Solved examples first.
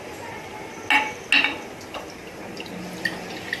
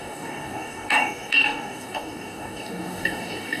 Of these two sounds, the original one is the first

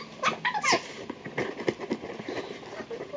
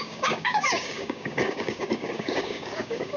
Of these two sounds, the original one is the first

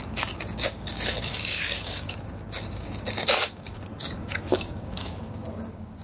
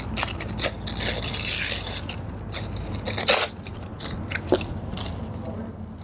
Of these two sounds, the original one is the second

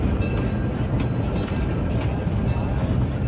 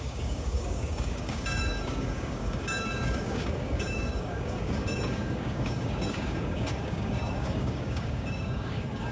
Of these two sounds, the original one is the first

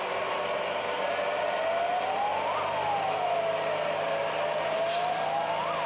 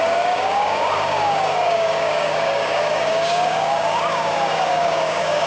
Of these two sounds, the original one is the first